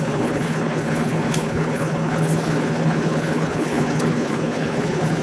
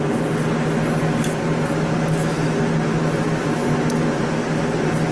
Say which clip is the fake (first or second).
first